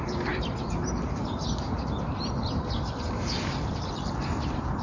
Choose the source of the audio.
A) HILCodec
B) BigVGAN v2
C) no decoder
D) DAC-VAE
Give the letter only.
B